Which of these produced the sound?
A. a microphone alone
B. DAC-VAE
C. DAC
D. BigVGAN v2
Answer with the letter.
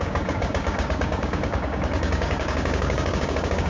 C